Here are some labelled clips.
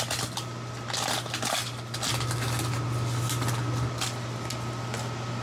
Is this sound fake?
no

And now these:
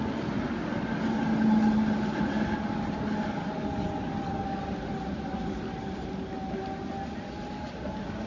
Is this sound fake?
no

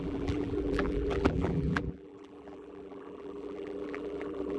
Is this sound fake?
yes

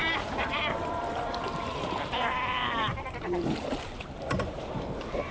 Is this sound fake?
yes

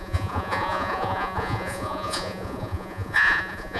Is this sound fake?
yes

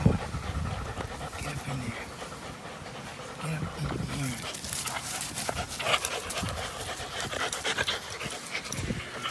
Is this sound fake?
no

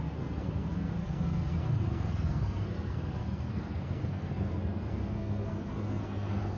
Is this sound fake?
yes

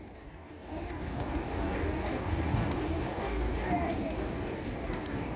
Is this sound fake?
yes